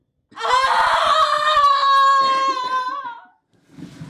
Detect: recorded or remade recorded